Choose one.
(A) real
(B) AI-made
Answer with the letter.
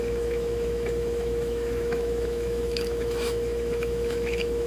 B